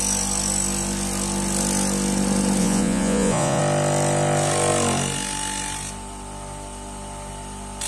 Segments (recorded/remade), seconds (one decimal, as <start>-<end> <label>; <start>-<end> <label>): 0.0-2.6 recorded; 2.6-3.6 remade; 3.6-7.9 recorded